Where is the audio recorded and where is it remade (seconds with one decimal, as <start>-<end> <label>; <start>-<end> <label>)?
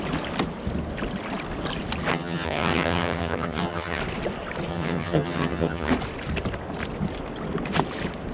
0.0-2.1 recorded; 2.1-4.0 remade; 4.0-4.7 recorded; 4.7-5.9 remade; 5.9-8.3 recorded